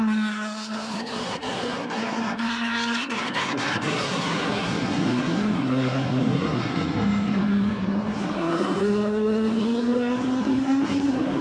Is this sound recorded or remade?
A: remade